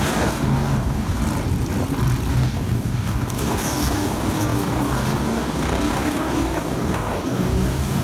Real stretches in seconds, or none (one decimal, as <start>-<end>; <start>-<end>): 1.2-2.3